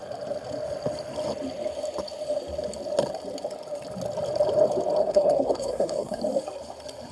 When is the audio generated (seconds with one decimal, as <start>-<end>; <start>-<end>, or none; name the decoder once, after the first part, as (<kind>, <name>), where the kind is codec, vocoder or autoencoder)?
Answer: 5.0-6.2 (codec, SNAC)

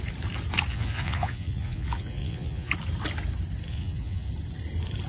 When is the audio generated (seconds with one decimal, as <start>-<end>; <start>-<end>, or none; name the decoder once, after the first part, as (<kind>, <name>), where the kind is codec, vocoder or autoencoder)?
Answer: 0.7-2.7 (vocoder, Vocos); 3.7-4.3

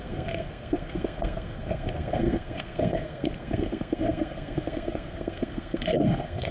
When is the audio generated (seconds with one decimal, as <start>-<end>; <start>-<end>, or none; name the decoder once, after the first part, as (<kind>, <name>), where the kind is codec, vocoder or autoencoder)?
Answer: 0.0-6.5 (codec, SNAC)

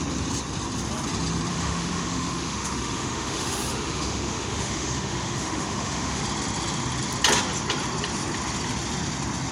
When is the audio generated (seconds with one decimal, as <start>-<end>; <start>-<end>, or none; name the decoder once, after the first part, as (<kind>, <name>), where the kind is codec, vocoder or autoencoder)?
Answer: 1.5-6.2 (autoencoder, DAC-VAE)

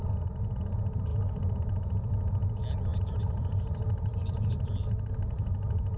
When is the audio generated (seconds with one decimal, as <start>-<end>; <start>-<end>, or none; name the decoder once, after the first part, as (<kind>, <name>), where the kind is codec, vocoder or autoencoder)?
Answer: 2.9-5.0 (vocoder, BigVGAN v2)